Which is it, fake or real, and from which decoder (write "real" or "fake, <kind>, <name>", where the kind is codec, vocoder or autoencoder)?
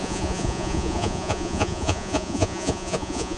fake, vocoder, Vocos